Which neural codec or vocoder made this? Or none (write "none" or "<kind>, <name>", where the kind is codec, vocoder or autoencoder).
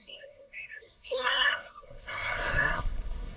codec, SNAC